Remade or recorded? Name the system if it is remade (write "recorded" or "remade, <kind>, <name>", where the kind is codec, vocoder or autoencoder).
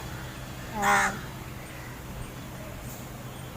recorded